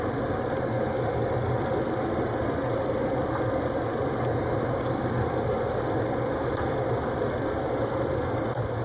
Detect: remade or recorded recorded